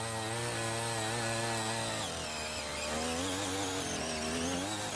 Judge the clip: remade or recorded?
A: recorded